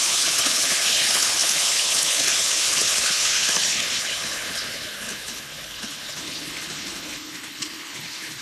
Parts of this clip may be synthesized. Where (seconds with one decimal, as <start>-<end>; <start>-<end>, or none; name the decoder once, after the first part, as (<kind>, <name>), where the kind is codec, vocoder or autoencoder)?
0.0-8.4 (codec, HILCodec)